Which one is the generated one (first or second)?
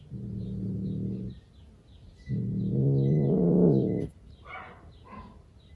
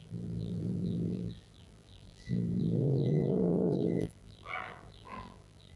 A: second